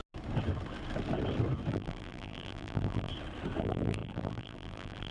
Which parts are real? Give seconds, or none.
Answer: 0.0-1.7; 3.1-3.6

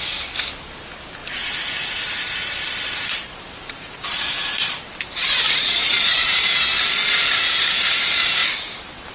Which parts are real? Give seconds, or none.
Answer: 0.0-1.2; 6.4-9.1

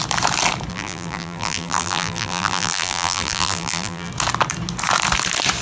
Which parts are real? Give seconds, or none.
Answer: 0.0-0.7; 4.1-5.6

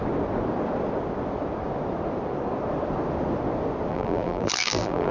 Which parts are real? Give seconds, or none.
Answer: 0.0-3.9

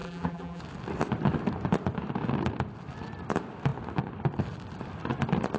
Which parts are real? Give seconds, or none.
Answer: 0.6-5.6

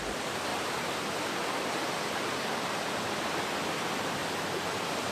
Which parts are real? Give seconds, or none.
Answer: 0.5-3.0; 4.2-5.1